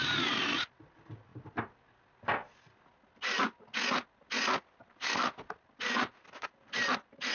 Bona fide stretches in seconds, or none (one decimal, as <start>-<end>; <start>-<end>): 0.0-7.3